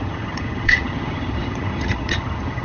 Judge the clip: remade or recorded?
remade